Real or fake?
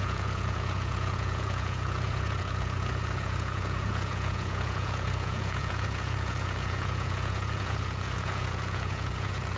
fake